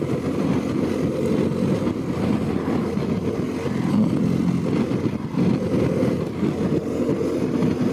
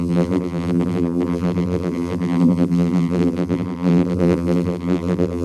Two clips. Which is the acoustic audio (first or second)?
first